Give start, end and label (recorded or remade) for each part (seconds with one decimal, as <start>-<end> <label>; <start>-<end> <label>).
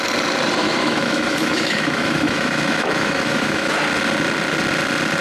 0.0-0.6 recorded; 0.6-3.7 remade; 3.7-5.2 recorded